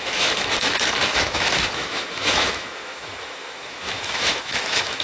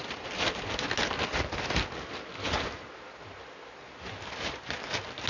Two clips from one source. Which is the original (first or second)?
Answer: second